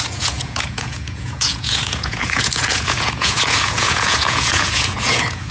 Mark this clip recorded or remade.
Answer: remade